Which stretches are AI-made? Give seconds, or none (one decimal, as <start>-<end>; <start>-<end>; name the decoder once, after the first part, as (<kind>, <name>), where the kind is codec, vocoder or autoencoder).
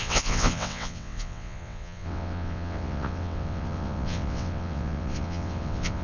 0.0-6.0 (vocoder, WaveNeXt)